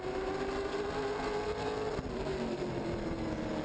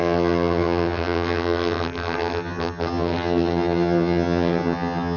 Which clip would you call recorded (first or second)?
first